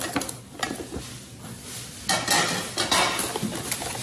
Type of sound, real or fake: real